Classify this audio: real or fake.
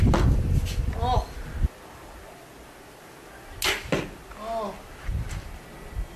real